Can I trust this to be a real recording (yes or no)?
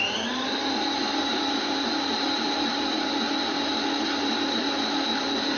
no